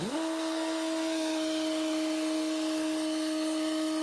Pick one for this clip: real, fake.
fake